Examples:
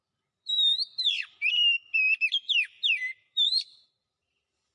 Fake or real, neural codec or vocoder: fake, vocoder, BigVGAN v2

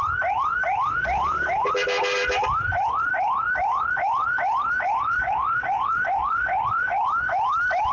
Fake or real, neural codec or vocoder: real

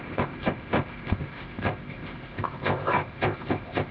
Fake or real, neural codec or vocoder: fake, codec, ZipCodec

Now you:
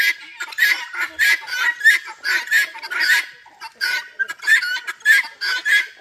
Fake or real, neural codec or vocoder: fake, vocoder, BigVGAN v2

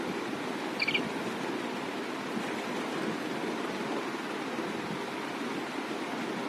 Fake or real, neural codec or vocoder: real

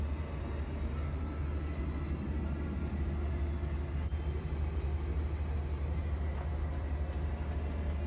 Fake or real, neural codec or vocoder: real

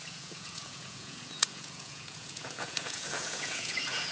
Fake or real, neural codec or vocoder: fake, vocoder, Vocos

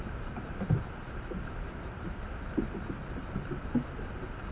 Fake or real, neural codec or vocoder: real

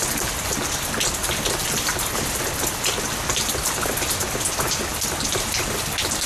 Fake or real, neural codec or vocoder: real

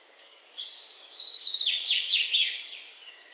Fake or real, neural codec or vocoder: fake, codec, DAC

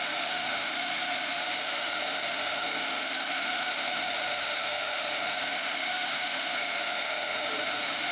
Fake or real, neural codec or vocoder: fake, autoencoder, DAC-VAE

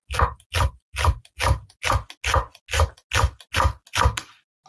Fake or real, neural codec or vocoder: real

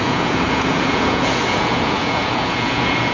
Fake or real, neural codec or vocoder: fake, vocoder, Vocos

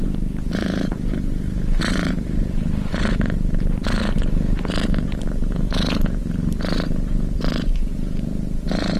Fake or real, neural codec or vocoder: fake, vocoder, BigVGAN v2